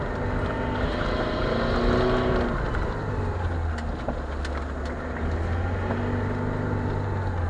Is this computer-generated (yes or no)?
no